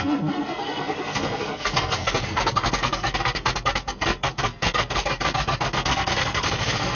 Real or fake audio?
fake